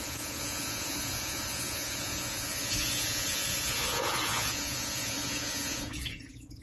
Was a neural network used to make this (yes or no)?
yes